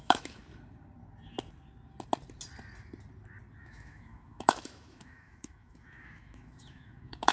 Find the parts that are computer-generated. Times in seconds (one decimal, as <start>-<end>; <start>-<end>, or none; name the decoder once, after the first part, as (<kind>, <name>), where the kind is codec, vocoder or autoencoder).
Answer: 0.0-0.4 (autoencoder, DAC-VAE); 3.6-7.3